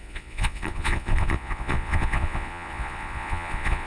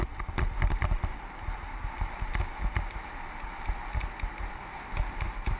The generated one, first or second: first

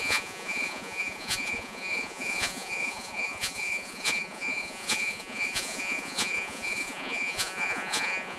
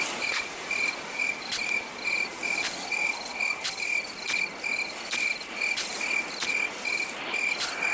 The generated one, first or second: first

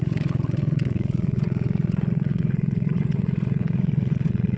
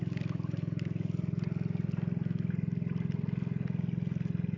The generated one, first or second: first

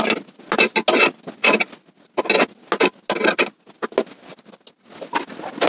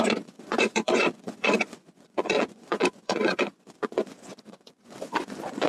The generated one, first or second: second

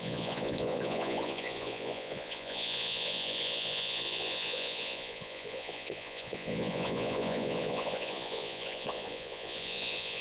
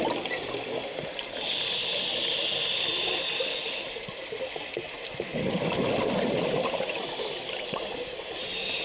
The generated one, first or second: first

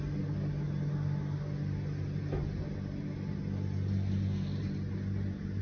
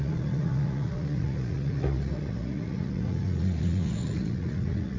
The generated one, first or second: second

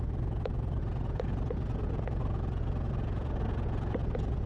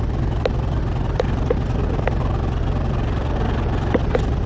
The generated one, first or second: first